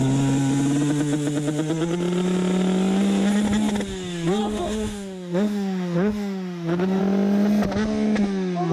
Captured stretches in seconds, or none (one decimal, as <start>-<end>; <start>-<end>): 0.0-4.4; 7.0-8.7